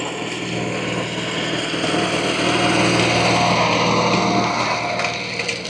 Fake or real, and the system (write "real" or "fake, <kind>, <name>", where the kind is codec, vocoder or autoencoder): real